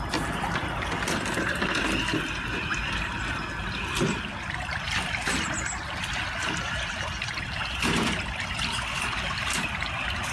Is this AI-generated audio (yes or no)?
no